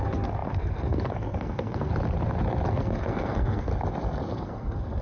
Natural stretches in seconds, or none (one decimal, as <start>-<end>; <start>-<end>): 1.9-2.7; 3.7-4.3